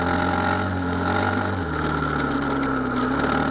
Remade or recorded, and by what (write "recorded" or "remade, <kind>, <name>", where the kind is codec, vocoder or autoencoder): recorded